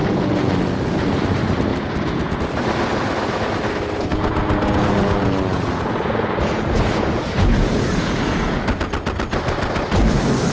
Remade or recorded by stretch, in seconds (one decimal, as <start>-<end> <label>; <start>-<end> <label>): 0.0-0.5 remade; 0.5-1.7 recorded; 1.7-2.4 remade; 2.4-4.1 recorded; 4.1-8.6 remade; 8.6-10.5 recorded